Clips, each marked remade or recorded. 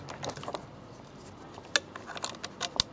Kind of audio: recorded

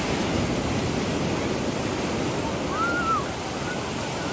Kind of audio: recorded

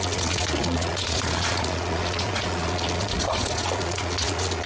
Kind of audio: remade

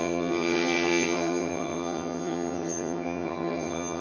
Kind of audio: remade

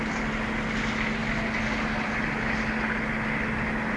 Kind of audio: recorded